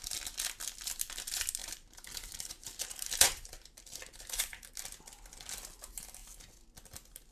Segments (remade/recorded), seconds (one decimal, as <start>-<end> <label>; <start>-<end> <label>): 0.0-1.6 recorded; 1.6-4.7 remade; 4.7-7.3 recorded